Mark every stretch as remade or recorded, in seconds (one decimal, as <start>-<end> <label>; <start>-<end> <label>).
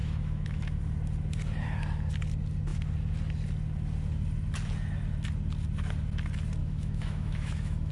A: 0.0-0.8 remade; 0.8-6.6 recorded; 6.6-7.9 remade